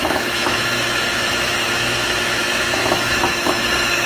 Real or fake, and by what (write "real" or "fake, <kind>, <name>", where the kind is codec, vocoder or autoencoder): fake, autoencoder, DAC-VAE